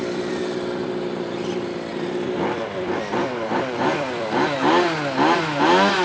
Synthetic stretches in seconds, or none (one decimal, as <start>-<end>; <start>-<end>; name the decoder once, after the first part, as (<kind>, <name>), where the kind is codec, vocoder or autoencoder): 1.9-4.2 (vocoder, BigVGAN v2)